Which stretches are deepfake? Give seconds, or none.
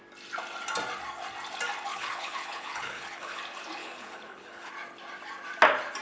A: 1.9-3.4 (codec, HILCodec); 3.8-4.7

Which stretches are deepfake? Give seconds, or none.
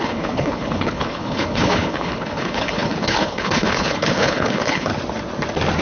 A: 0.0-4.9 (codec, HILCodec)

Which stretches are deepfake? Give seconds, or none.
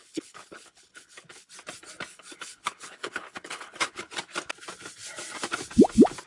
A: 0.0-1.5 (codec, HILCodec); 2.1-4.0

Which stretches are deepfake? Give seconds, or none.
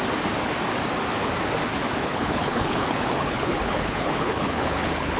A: 2.0-5.2 (codec, HILCodec)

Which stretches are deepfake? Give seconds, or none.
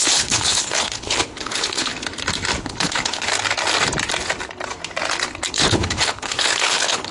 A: 0.0-1.9 (codec, HILCodec); 2.6-3.3; 5.5-7.1